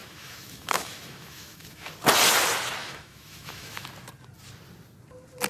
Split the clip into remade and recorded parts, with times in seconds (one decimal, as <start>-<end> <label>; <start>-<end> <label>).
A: 0.0-1.9 remade; 1.9-2.8 recorded; 2.8-3.9 remade; 3.9-5.5 recorded